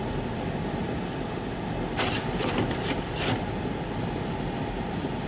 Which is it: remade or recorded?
recorded